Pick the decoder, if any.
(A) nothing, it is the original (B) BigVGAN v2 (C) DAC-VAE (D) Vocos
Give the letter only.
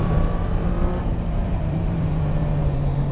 B